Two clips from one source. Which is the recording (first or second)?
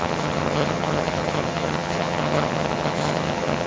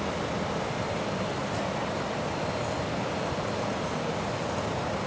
second